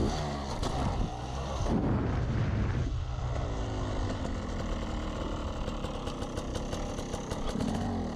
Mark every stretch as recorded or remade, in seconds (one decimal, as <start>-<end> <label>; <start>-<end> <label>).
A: 0.0-8.2 recorded